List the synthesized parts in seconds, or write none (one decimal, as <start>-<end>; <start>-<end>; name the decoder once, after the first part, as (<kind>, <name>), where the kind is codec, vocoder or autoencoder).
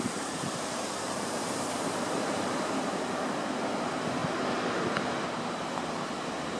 0.0-4.2 (vocoder, BigVGAN v2); 5.5-6.6